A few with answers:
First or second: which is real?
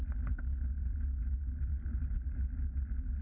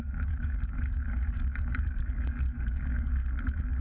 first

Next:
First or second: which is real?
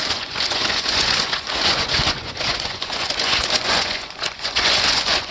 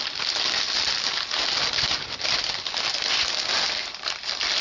second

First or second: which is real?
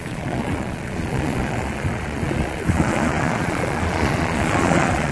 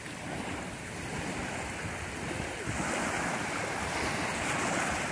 second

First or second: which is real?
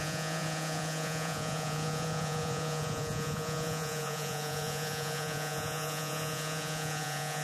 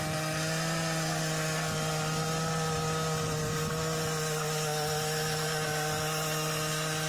second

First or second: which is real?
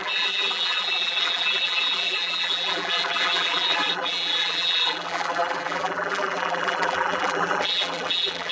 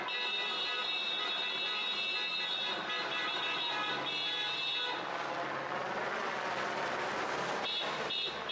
second